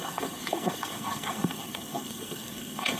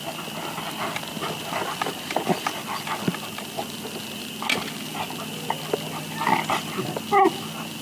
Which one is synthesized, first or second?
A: first